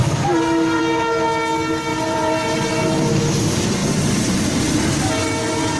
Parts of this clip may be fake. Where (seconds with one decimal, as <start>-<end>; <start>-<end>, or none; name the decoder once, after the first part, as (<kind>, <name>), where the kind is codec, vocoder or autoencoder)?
0.0-0.8 (vocoder, BigVGAN v2); 1.9-2.7

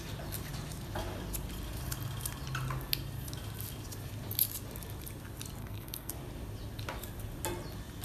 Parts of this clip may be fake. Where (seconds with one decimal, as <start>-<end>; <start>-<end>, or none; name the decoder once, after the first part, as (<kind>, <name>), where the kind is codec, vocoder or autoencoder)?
5.6-6.1 (codec, SNAC)

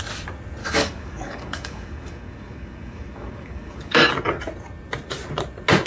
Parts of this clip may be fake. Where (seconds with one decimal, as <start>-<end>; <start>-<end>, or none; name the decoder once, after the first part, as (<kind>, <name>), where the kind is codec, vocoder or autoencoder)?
0.6-4.1 (codec, DAC)